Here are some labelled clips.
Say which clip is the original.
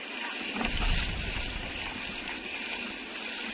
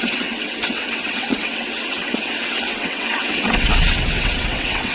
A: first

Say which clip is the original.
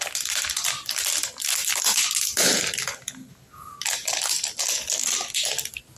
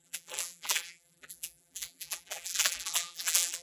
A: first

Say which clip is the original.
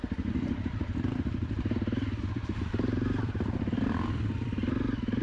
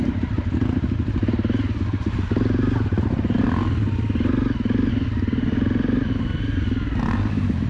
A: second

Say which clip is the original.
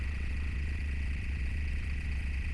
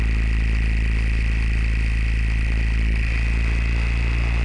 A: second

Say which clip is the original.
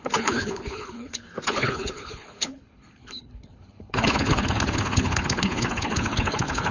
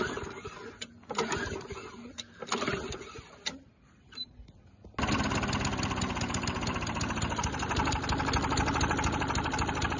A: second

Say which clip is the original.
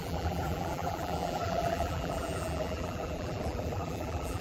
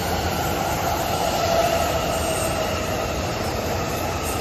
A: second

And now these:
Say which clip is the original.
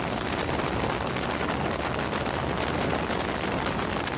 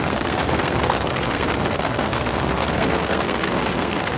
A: first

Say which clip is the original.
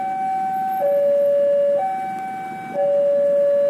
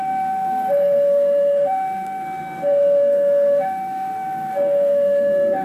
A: first